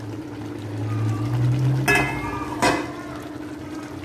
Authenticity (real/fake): real